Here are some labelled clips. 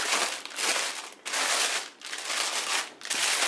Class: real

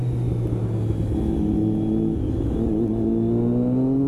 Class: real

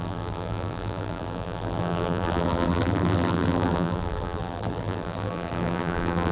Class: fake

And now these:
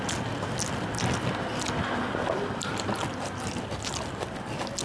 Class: real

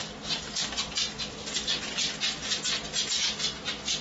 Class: real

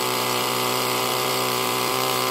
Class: fake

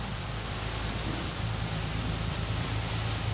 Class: fake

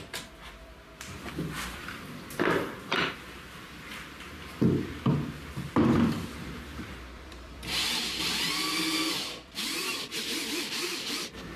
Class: fake